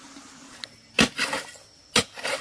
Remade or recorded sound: recorded